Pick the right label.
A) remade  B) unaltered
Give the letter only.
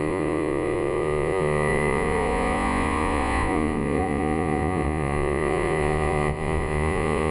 A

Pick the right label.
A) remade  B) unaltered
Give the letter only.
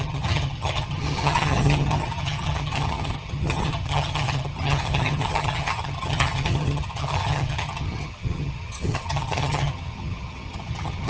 A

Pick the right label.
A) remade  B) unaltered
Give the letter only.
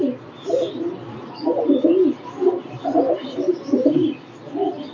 B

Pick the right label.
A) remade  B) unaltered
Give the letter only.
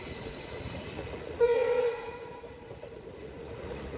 A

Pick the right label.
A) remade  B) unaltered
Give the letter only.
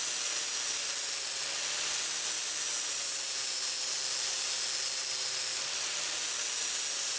B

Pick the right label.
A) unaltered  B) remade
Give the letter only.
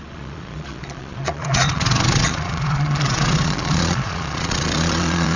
B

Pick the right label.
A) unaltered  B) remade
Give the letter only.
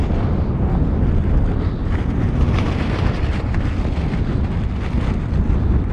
A